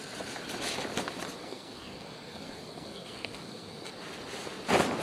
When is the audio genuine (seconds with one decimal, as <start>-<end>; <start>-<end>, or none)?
0.0-1.4; 3.9-5.0